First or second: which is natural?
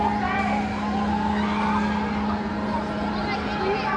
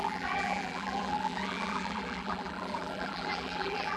first